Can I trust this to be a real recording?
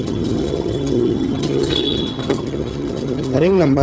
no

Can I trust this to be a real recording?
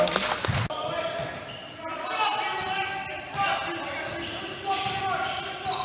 yes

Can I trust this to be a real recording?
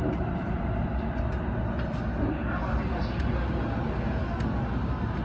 yes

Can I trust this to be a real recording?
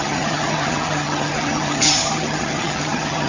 no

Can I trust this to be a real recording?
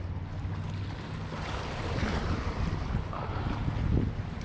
yes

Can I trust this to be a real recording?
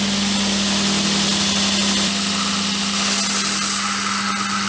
yes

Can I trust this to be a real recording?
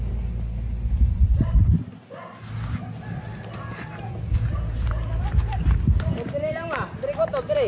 yes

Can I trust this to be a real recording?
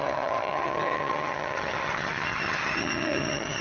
no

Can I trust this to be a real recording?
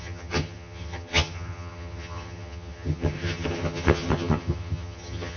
no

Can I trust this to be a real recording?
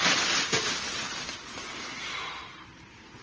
yes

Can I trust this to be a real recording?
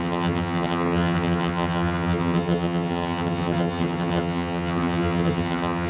no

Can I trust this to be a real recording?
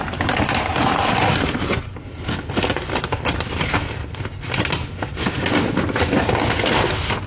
yes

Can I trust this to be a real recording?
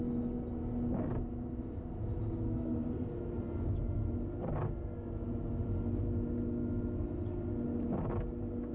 yes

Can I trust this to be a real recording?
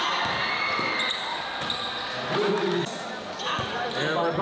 yes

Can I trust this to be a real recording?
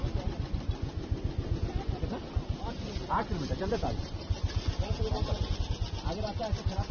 yes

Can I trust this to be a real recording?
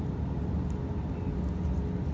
yes